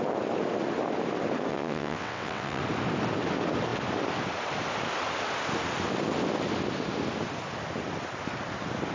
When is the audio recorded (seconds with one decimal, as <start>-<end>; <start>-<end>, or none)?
0.0-1.5; 2.6-8.9